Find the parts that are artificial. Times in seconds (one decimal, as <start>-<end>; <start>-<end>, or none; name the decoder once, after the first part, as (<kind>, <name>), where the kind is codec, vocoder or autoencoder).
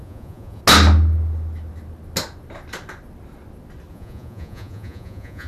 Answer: 0.0-0.6 (vocoder, Vocos); 3.9-5.5